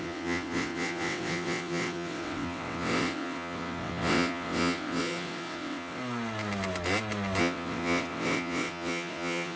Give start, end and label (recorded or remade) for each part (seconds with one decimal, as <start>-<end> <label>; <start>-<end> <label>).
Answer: 0.0-6.0 remade; 6.0-7.4 recorded; 7.4-9.6 remade

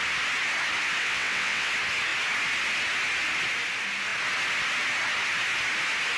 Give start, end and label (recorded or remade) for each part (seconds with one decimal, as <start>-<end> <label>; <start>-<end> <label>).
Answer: 0.0-1.0 recorded; 1.0-1.7 remade; 1.7-6.2 recorded